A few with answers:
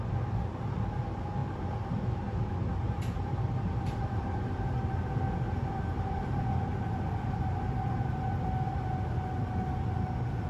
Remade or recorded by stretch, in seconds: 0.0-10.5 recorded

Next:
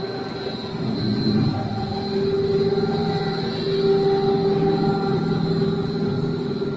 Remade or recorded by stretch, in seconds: 0.0-6.8 recorded

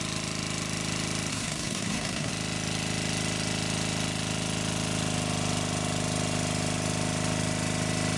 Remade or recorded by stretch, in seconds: 0.0-1.3 recorded; 1.3-2.3 remade; 2.3-8.2 recorded

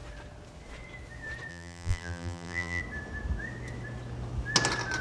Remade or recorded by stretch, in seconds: 0.0-1.5 recorded; 1.5-2.8 remade; 2.8-5.0 recorded

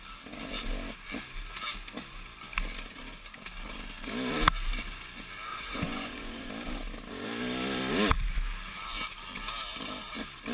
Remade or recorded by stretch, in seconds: 0.0-5.5 recorded; 5.5-6.5 remade; 6.5-10.5 recorded

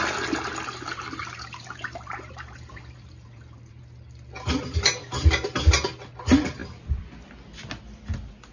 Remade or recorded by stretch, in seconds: 0.0-1.2 recorded; 1.2-3.8 remade; 3.8-5.0 recorded; 5.0-5.6 remade; 5.6-8.5 recorded